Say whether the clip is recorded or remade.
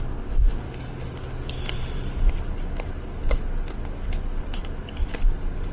recorded